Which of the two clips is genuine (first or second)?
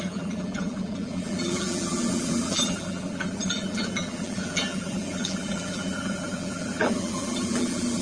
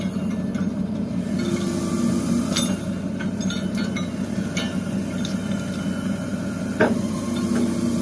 second